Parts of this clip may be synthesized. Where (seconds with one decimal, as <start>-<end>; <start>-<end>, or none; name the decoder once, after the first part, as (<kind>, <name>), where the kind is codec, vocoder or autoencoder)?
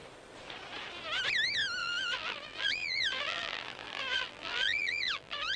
1.8-5.6 (vocoder, BigVGAN v2)